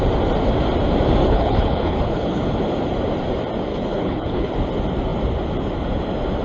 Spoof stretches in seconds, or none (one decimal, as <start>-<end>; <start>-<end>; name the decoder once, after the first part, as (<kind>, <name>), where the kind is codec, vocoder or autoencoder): 1.2-2.5 (codec, HILCodec); 3.7-4.5